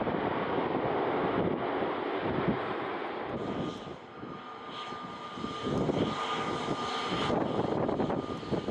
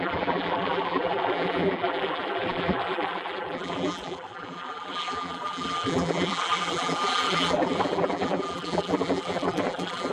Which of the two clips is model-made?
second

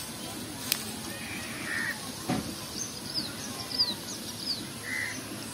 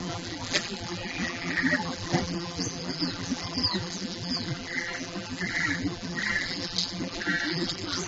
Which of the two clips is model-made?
second